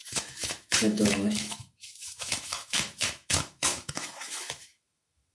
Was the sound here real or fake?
fake